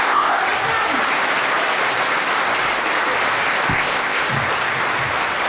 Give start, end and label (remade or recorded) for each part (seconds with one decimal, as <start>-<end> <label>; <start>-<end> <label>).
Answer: 0.0-0.4 remade; 0.4-3.7 recorded; 3.7-4.2 remade; 4.2-5.5 recorded